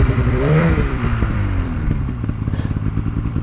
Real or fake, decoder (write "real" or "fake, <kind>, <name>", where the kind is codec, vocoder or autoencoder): fake, vocoder, BigVGAN v2